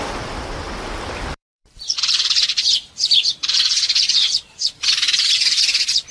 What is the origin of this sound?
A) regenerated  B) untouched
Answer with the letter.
A